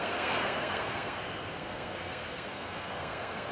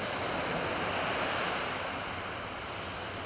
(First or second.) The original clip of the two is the second